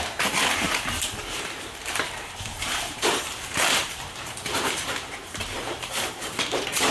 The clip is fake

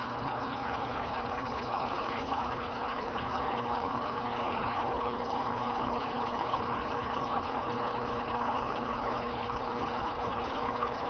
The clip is fake